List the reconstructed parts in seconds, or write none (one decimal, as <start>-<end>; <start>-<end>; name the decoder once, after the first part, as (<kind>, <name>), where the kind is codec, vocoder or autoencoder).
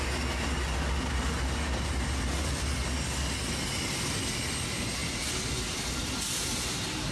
none